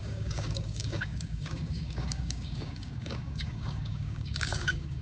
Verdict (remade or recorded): remade